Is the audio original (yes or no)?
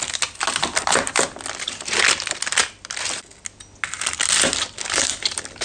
yes